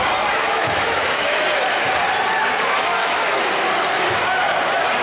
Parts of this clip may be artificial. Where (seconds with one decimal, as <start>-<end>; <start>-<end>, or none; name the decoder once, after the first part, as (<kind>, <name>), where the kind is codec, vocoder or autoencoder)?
0.4-1.4 (autoencoder, DAC-VAE); 3.0-3.5